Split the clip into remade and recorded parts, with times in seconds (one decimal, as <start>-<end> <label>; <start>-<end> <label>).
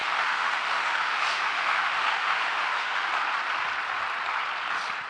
0.0-3.1 remade; 3.1-5.1 recorded